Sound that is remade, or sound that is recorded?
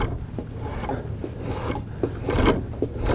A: recorded